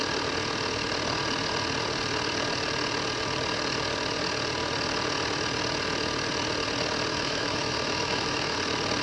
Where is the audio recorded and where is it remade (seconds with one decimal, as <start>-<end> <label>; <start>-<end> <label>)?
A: 0.0-7.1 recorded; 7.1-8.6 remade; 8.6-9.0 recorded